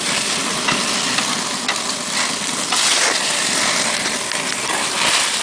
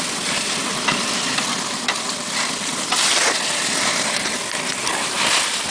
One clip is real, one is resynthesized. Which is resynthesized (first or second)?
second